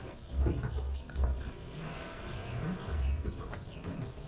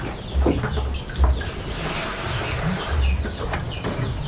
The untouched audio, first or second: second